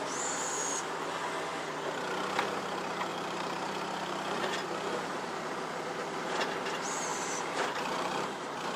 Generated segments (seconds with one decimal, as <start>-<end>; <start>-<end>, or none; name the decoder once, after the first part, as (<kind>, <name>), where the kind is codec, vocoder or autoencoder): 3.1-6.4 (vocoder, BigVGAN v2); 7.1-8.8